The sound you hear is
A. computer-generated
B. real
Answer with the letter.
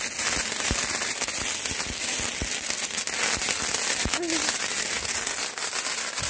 B